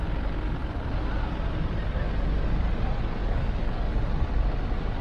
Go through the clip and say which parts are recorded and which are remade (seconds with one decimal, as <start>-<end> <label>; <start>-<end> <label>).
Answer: 0.0-3.2 recorded; 3.2-3.9 remade; 3.9-5.0 recorded